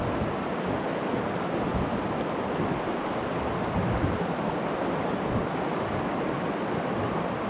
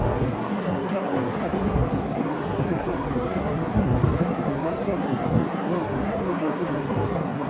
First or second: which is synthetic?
second